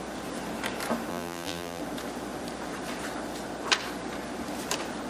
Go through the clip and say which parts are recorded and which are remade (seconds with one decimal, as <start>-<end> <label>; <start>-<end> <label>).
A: 0.0-1.1 recorded; 1.1-1.8 remade; 1.8-5.1 recorded